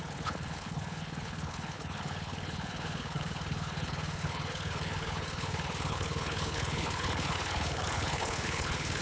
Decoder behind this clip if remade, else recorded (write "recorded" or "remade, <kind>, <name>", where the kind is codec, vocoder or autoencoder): remade, codec, HILCodec